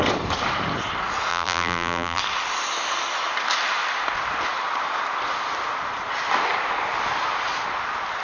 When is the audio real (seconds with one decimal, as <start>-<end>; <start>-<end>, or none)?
0.0-1.3; 2.2-8.2